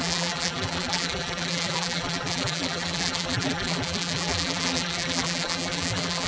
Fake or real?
fake